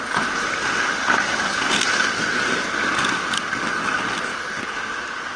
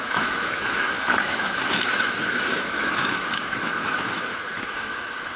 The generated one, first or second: second